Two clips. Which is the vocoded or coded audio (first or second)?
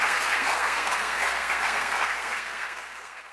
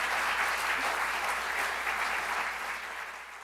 first